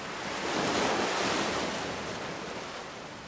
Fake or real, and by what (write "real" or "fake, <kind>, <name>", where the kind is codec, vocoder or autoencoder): real